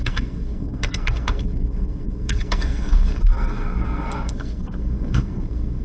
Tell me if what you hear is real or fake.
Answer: fake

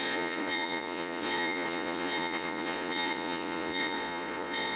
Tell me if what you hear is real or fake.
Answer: fake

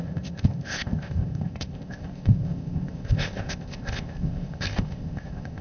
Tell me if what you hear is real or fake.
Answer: fake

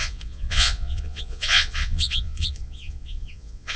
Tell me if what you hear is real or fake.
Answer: fake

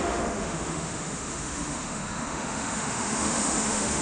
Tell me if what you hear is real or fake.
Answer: fake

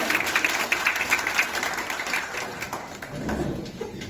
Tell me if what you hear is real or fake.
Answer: fake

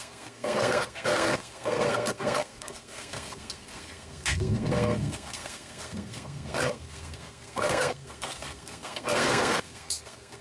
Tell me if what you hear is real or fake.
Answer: fake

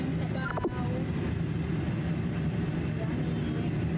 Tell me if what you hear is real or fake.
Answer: real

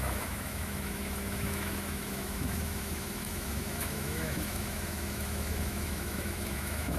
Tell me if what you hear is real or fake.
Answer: fake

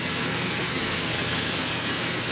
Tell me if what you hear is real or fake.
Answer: fake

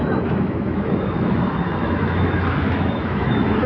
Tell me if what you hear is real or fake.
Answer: fake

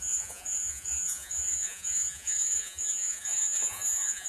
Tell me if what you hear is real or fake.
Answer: fake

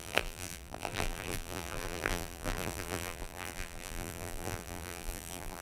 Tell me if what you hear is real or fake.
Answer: fake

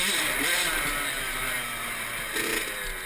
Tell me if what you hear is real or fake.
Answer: real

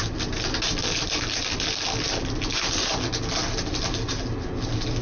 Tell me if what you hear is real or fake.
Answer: real